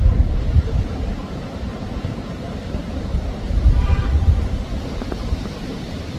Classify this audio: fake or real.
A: fake